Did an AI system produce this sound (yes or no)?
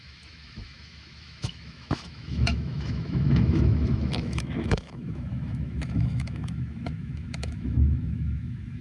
yes